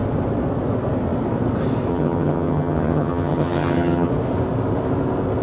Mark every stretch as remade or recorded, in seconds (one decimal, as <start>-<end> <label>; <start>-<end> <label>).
0.0-1.9 recorded; 1.9-4.1 remade; 4.1-5.4 recorded